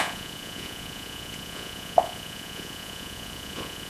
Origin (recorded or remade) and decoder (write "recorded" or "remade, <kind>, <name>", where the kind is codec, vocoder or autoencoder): remade, vocoder, Vocos